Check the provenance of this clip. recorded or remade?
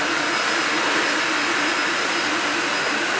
recorded